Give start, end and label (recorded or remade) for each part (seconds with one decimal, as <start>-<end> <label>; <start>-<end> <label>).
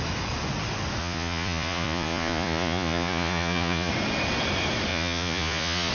0.0-1.0 recorded; 1.0-3.9 remade; 3.9-4.9 recorded; 4.9-5.9 remade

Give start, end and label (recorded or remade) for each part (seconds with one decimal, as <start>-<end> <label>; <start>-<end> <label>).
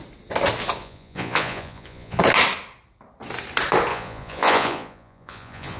0.0-0.8 recorded; 0.8-2.2 remade; 2.2-3.9 recorded; 3.9-5.8 remade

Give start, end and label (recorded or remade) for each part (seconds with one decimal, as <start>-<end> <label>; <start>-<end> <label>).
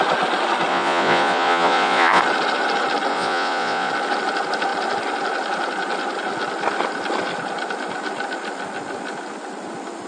0.0-0.7 recorded; 0.7-2.2 remade; 2.2-3.1 recorded; 3.1-3.9 remade; 3.9-10.1 recorded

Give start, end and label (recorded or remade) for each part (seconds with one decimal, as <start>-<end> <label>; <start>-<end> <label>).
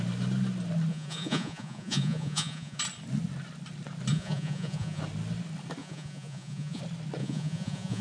0.0-0.9 recorded; 0.9-2.8 remade; 2.8-4.1 recorded; 4.1-5.0 remade; 5.0-5.8 recorded; 5.8-6.8 remade; 6.8-7.2 recorded; 7.2-8.0 remade